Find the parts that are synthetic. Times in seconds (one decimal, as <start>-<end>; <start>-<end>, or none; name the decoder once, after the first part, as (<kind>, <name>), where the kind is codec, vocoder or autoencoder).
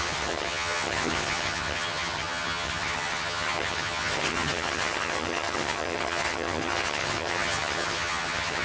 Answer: 0.0-8.6 (vocoder, HiFi-GAN)